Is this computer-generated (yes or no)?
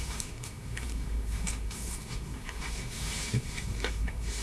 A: yes